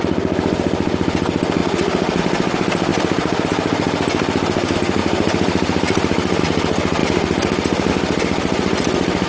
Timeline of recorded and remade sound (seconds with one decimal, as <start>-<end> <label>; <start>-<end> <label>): 0.0-2.9 recorded; 2.9-3.4 remade; 3.4-5.0 recorded; 5.0-6.4 remade; 6.4-7.0 recorded; 7.0-7.9 remade; 7.9-9.3 recorded